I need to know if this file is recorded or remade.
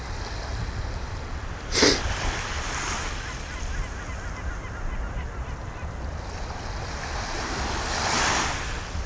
recorded